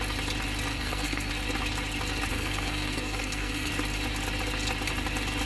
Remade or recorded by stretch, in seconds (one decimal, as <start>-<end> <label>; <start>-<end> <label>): 0.0-0.7 recorded; 0.7-1.3 remade; 1.3-2.3 recorded; 2.3-3.7 remade; 3.7-5.5 recorded